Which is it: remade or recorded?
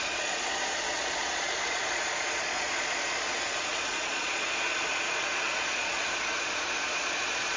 remade